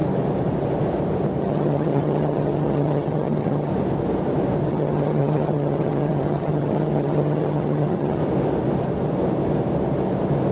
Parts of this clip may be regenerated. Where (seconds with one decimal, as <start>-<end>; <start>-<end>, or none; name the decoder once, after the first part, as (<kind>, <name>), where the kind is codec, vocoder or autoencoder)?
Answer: 1.4-3.7 (vocoder, HiFi-GAN); 4.7-8.2